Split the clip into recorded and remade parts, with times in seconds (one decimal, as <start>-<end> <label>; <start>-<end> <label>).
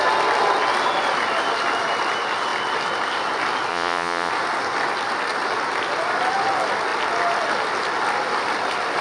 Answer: 0.0-3.7 recorded; 3.7-4.3 remade; 4.3-9.0 recorded